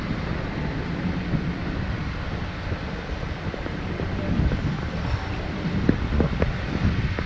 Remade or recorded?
remade